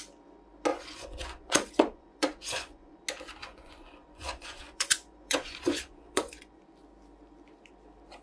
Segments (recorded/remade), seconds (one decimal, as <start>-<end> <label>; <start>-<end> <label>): 0.0-0.7 recorded; 0.7-3.0 remade; 3.0-3.4 recorded; 3.4-6.6 remade; 6.6-8.2 recorded